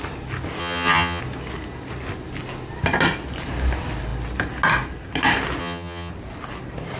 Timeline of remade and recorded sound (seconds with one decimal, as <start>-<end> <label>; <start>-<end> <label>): 0.0-0.6 recorded; 0.6-1.2 remade; 1.2-5.6 recorded; 5.6-6.1 remade; 6.1-7.0 recorded